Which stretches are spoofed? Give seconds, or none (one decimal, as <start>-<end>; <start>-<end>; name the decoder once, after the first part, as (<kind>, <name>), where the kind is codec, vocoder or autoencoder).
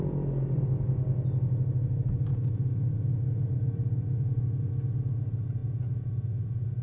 2.3-4.7 (vocoder, Vocos); 5.6-6.8